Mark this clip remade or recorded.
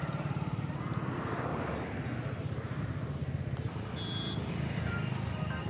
recorded